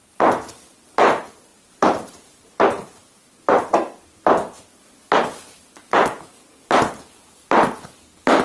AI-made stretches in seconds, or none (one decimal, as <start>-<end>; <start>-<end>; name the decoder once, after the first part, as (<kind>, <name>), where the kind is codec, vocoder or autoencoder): 1.5-2.5 (vocoder, BigVGAN v2)